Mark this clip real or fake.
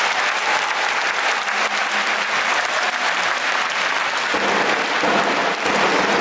real